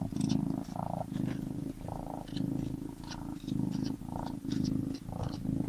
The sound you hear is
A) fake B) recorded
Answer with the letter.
B